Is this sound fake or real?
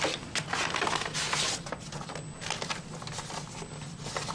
real